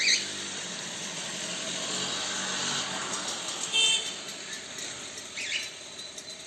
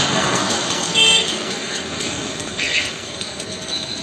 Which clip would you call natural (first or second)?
first